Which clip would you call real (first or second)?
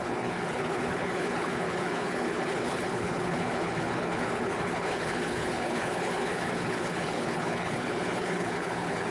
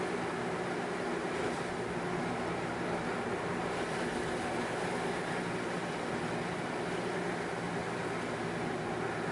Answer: second